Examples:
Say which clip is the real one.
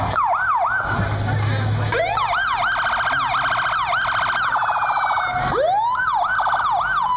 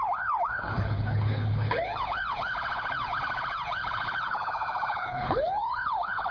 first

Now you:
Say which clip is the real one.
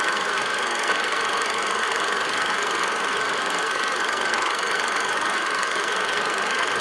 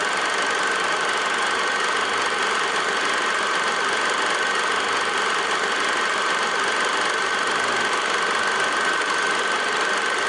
second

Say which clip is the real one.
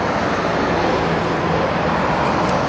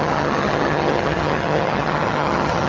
first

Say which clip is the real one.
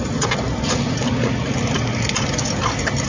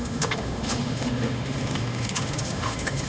first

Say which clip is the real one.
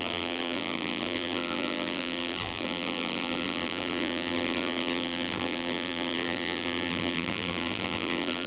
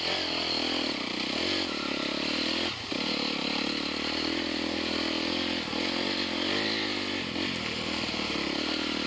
second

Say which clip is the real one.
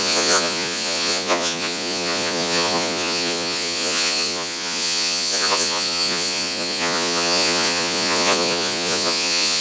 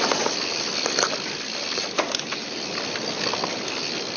second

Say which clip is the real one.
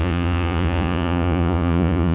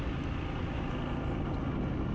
second